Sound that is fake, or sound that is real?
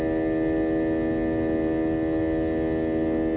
real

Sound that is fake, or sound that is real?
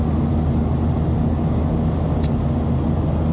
real